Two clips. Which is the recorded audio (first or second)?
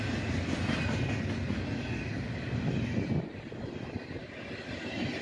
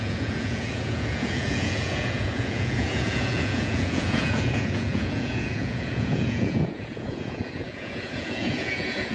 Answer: first